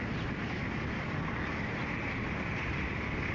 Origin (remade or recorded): recorded